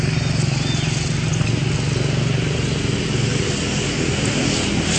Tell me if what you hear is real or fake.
real